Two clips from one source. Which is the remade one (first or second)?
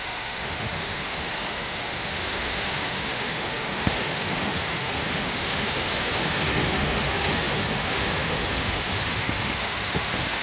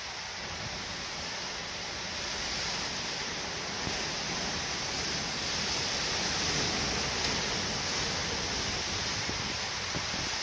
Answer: first